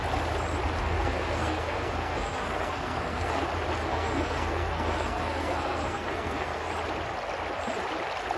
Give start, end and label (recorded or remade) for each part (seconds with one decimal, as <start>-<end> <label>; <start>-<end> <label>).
0.0-0.8 recorded; 0.8-3.4 remade; 3.4-3.8 recorded; 3.8-6.7 remade; 6.7-8.4 recorded